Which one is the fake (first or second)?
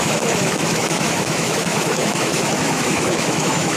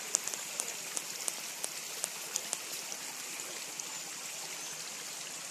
first